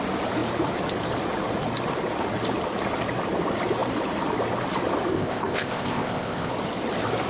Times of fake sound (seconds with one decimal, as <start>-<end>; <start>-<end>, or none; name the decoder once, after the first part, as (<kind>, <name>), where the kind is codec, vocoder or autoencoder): 5.1-6.5 (codec, ZipCodec)